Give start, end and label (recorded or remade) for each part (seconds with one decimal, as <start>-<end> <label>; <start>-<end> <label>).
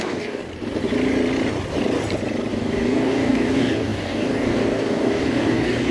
0.0-0.4 remade; 0.4-2.5 recorded; 2.5-5.9 remade